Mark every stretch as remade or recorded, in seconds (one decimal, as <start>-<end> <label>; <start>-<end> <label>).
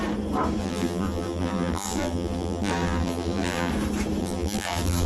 0.0-0.6 recorded; 0.6-3.7 remade; 3.7-4.2 recorded; 4.2-5.1 remade